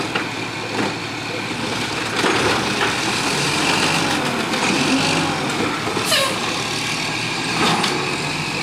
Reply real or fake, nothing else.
real